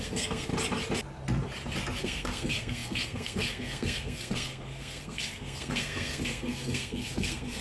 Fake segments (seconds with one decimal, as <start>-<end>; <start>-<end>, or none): 0.0-0.5; 2.0-7.6